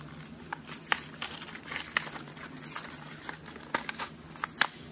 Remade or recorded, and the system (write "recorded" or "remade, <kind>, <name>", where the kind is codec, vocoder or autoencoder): recorded